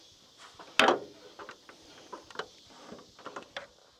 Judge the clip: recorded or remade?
recorded